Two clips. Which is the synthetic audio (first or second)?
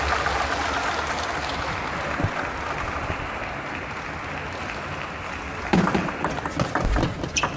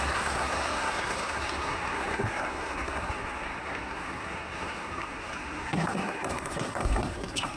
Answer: second